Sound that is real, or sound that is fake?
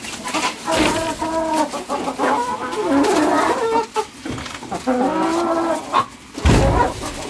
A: real